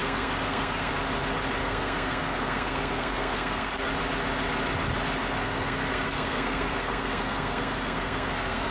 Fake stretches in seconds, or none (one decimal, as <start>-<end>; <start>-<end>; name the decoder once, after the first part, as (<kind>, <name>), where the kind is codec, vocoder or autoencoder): 0.0-0.9 (codec, SNAC); 1.6-3.9; 5.4-8.7